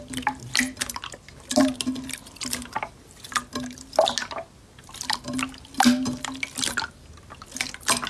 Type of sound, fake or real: real